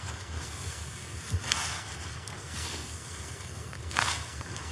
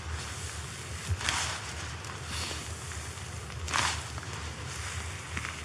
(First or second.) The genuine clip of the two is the second